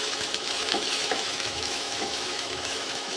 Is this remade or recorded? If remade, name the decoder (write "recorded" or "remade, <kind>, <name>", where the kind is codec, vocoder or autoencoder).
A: remade, autoencoder, DAC-VAE